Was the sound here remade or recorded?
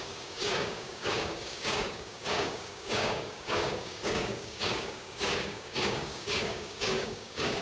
remade